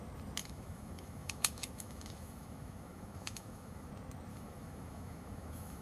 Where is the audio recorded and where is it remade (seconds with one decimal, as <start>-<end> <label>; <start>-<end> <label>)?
0.0-0.4 recorded; 0.4-3.9 remade; 3.9-4.3 recorded; 4.3-5.8 remade